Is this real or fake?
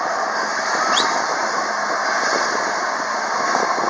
real